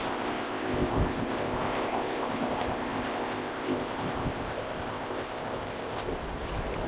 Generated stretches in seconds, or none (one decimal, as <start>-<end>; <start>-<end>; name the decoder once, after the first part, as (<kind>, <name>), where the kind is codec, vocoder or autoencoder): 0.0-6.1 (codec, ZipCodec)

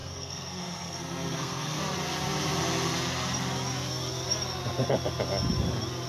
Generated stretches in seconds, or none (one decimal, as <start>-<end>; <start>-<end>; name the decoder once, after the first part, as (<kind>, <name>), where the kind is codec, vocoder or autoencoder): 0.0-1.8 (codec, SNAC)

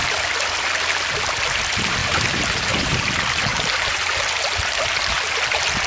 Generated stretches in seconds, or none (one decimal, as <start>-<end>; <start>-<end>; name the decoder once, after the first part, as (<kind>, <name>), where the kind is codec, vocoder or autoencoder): 2.0-3.1 (vocoder, BigVGAN v2); 3.5-4.0